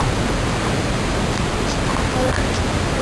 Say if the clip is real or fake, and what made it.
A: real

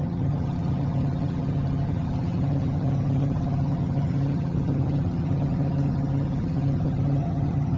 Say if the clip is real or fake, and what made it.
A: fake, vocoder, HiFi-GAN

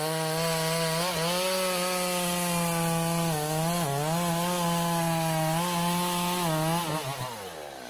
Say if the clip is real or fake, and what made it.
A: real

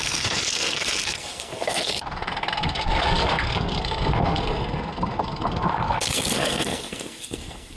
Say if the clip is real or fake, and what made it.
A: fake, codec, SNAC